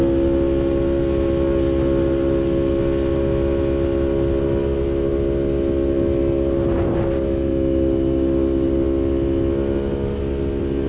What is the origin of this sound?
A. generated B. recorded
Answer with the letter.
B